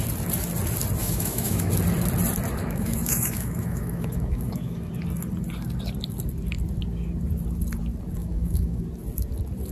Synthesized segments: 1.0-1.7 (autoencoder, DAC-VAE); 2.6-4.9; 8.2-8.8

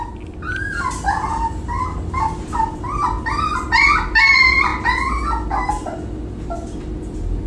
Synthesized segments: 1.3-2.3 (vocoder, BigVGAN v2)

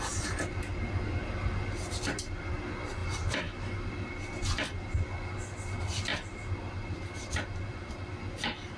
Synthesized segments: 3.0-4.1 (vocoder, BigVGAN v2); 6.1-8.1